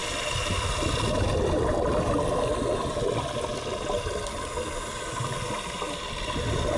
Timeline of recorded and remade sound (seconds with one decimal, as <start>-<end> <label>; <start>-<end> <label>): 0.0-6.8 recorded